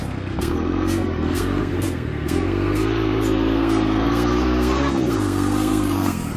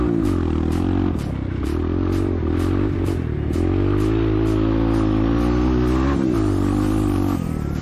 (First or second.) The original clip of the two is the second